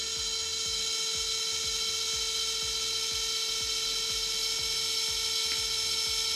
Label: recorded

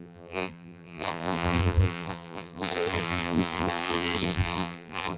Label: remade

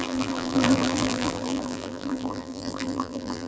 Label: remade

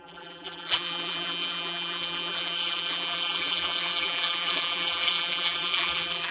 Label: remade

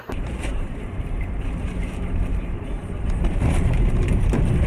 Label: remade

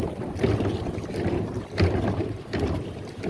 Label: remade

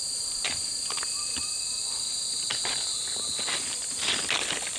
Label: recorded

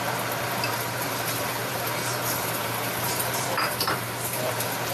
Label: remade